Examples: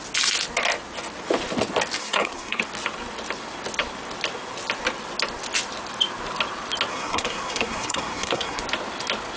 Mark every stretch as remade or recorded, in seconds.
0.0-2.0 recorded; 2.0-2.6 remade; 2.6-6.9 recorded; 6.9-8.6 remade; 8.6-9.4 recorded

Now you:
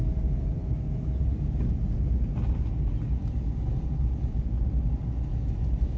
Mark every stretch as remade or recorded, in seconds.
0.0-6.0 recorded

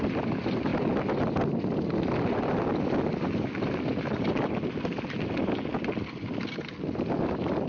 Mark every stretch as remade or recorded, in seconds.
0.0-7.7 recorded

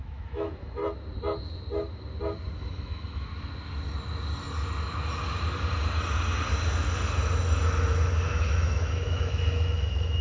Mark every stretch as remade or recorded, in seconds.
0.0-0.8 remade; 0.8-2.6 recorded; 2.6-3.3 remade; 3.3-8.4 recorded; 8.4-10.2 remade

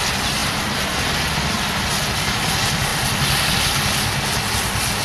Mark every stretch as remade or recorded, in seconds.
0.0-5.0 recorded

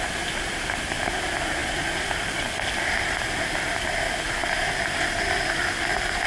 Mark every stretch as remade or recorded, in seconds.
0.0-6.3 recorded